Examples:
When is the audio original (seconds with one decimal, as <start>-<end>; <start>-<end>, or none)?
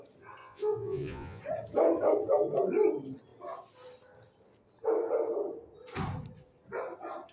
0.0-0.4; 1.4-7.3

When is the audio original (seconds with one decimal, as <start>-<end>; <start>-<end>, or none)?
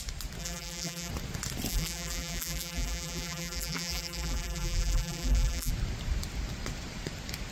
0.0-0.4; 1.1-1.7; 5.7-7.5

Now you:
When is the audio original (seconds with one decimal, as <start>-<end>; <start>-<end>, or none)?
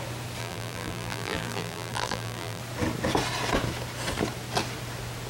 0.0-0.4; 2.6-5.3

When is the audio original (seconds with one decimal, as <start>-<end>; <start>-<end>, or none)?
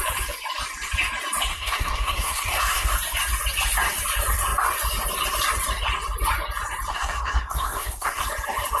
0.0-1.5; 2.9-6.9; 8.2-8.8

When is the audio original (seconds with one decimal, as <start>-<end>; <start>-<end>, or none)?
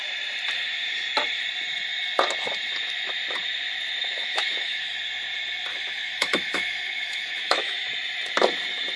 0.0-4.0; 4.9-5.7; 7.9-9.0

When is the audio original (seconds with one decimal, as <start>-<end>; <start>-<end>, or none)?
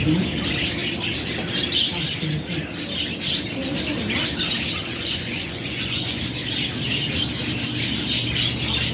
0.0-4.8; 6.2-8.9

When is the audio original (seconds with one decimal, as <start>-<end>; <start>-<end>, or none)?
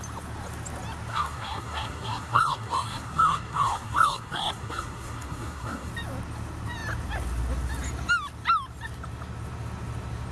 0.0-1.1; 5.9-10.3